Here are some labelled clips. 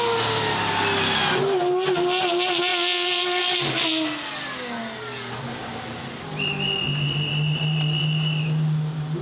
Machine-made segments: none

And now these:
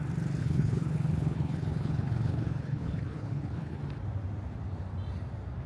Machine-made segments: 0.4-3.8

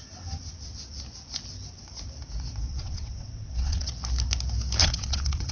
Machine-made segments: 2.7-3.9; 4.8-5.5